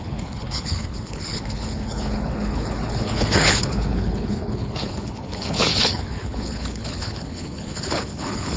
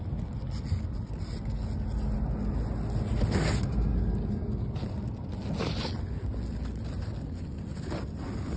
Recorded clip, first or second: second